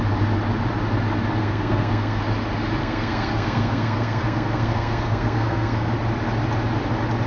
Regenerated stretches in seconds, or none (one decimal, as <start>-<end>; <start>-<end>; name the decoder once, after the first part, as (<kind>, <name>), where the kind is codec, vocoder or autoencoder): 1.4-2.2 (codec, SNAC); 2.8-5.9